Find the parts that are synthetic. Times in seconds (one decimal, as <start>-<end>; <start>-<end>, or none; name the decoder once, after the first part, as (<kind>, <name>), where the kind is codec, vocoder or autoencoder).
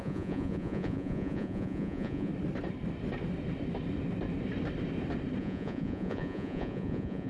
0.0-2.3 (vocoder, Vocos); 5.4-7.3